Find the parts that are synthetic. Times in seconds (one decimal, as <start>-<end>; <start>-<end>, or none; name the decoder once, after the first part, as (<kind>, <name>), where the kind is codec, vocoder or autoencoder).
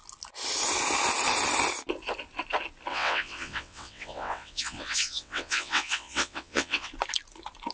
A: 2.9-6.9 (vocoder, WaveNeXt)